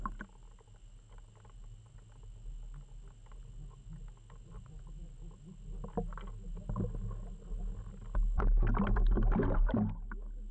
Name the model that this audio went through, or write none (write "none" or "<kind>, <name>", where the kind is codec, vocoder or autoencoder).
none